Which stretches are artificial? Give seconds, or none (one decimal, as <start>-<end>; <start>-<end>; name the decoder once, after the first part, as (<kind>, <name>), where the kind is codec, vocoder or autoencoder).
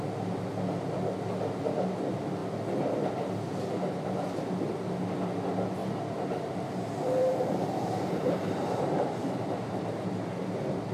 5.8-6.8 (vocoder, BigVGAN v2); 7.2-10.4